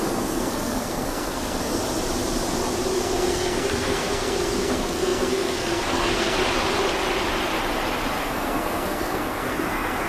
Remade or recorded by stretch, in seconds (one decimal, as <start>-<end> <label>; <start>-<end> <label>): 0.0-1.8 remade; 1.8-2.9 recorded; 2.9-6.4 remade; 6.4-8.2 recorded; 8.2-10.1 remade

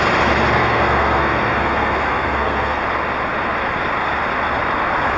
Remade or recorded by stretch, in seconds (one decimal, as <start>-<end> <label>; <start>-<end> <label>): 0.0-0.6 recorded; 0.6-2.8 remade; 2.8-5.2 recorded

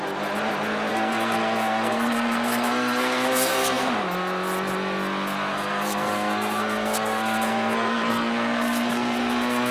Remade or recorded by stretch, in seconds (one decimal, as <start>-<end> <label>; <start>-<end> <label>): 0.0-0.9 recorded; 0.9-3.9 remade; 3.9-5.5 recorded; 5.5-9.7 remade

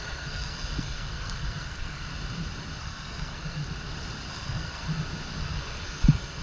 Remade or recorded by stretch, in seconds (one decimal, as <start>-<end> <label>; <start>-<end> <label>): 0.0-2.1 remade; 2.1-2.8 recorded; 2.8-3.6 remade; 3.6-4.3 recorded; 4.3-4.8 remade; 4.8-5.4 recorded; 5.4-6.4 remade

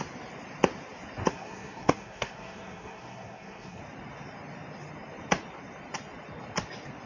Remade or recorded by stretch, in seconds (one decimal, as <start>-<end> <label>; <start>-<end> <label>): 0.0-1.3 recorded; 1.3-3.8 remade; 3.8-7.1 recorded

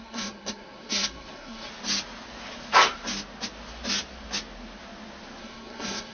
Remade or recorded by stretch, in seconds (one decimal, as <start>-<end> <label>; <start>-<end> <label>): 0.0-1.7 remade; 1.7-5.4 recorded; 5.4-6.1 remade

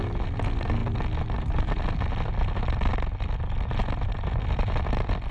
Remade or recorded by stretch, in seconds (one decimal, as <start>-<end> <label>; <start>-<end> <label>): 0.0-5.3 recorded